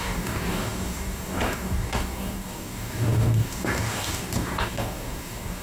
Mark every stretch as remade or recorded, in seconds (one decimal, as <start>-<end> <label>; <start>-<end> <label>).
0.0-5.6 remade